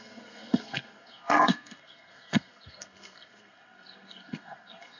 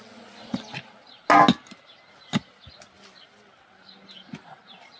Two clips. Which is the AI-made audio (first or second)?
first